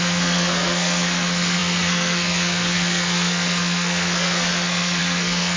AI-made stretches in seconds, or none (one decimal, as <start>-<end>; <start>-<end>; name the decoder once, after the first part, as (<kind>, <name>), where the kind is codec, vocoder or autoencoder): 0.0-5.6 (codec, SNAC)